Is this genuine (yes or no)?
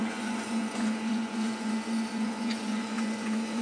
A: no